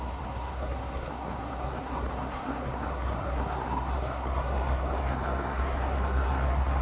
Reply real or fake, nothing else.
fake